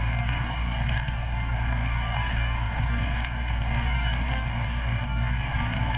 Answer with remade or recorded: remade